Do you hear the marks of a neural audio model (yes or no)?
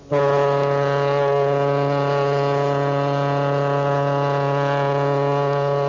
no